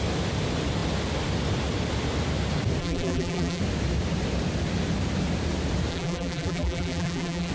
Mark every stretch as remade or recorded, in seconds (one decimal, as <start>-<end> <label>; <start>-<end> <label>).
0.0-2.8 recorded; 2.8-3.6 remade; 3.6-5.9 recorded; 5.9-7.5 remade